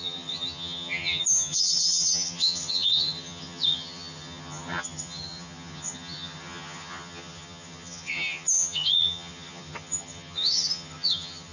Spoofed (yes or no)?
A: yes